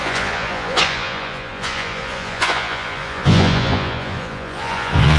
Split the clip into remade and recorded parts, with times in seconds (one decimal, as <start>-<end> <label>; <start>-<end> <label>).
0.0-5.2 remade